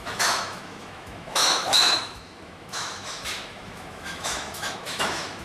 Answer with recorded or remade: remade